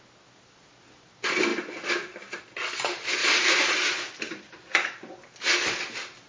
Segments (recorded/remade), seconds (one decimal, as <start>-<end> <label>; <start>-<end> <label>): 0.0-3.2 recorded; 3.2-5.1 remade; 5.1-6.3 recorded